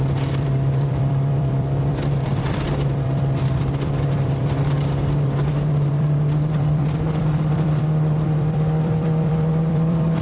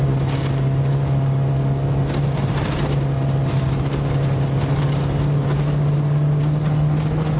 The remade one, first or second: first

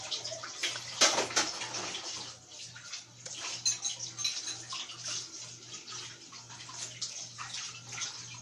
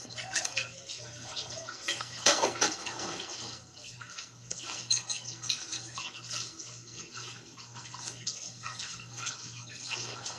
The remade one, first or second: second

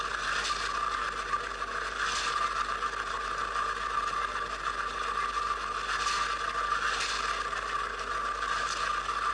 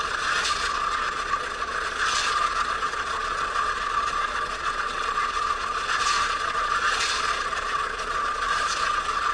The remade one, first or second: second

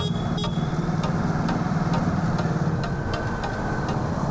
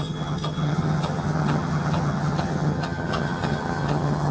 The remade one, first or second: second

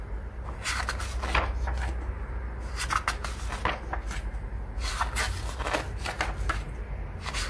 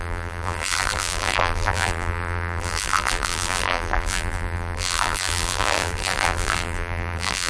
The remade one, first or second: second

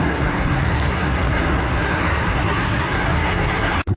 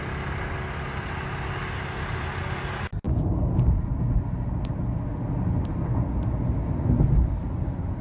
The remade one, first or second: first